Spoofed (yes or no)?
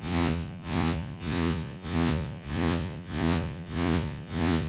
yes